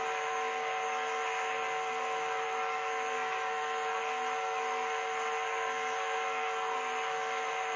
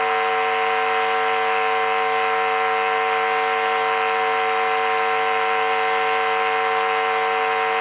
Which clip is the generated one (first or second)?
first